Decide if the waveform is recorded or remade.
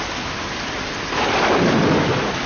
recorded